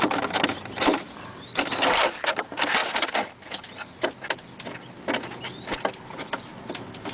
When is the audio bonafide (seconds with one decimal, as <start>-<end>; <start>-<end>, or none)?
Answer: 0.0-7.1